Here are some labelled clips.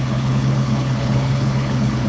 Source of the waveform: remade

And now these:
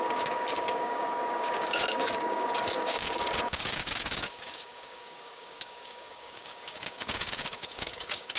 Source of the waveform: remade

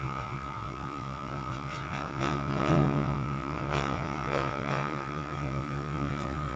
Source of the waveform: remade